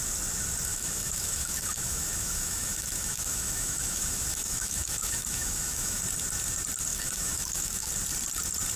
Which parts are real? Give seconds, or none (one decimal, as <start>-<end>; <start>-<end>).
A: 0.0-0.7; 6.0-6.9; 7.9-8.8